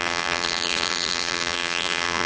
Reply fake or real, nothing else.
fake